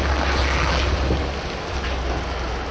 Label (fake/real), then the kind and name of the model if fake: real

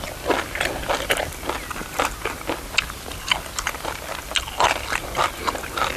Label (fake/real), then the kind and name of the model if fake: real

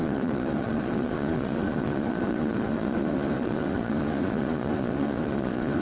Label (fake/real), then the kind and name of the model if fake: fake, vocoder, Vocos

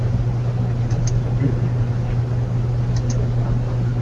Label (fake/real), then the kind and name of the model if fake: real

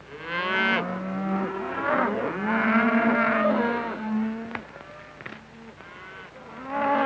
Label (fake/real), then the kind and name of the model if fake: real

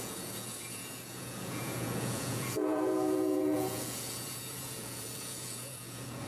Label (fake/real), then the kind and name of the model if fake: fake, vocoder, Vocos